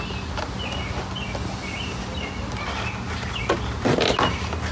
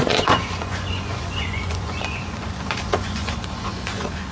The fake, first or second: second